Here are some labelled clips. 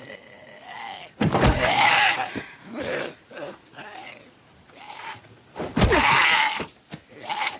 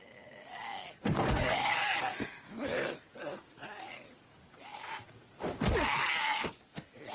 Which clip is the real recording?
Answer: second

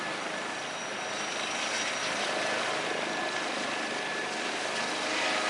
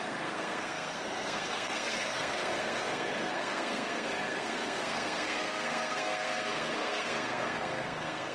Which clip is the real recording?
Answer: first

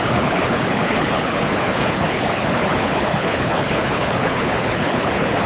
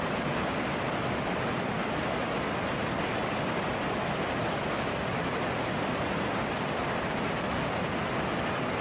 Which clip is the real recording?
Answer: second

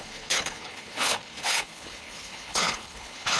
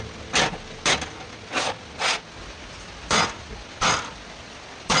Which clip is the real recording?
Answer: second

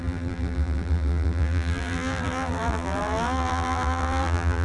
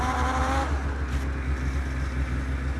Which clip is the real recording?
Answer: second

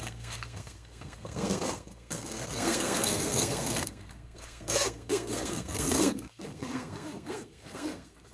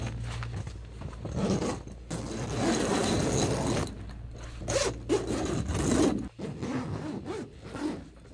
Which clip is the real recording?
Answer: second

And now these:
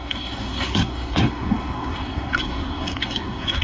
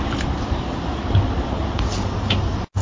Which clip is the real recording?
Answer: second